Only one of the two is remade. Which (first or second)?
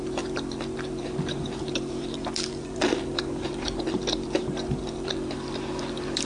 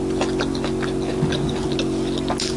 first